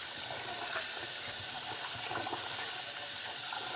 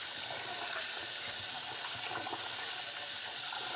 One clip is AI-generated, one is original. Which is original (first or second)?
second